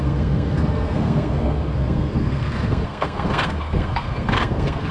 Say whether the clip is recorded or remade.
remade